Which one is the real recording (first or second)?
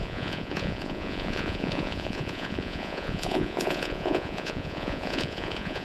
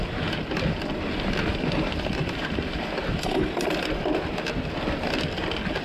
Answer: second